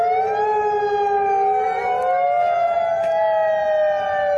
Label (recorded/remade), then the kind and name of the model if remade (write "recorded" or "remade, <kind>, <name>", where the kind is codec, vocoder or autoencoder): recorded